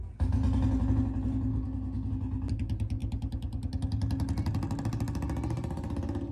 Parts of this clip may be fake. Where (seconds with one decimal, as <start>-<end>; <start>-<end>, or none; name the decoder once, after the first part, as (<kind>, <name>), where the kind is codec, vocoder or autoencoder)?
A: 1.5-2.1 (codec, SNAC)